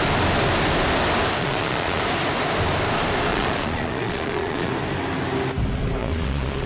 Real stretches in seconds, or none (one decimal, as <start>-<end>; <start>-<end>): 0.0-1.4; 2.0-3.3; 4.7-6.0